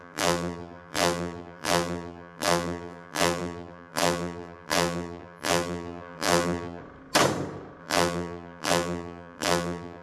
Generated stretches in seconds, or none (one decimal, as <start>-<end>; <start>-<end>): 0.0-6.8; 7.8-10.0